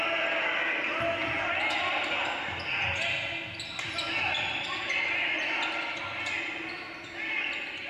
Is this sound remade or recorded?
recorded